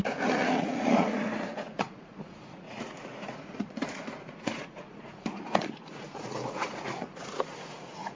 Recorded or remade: remade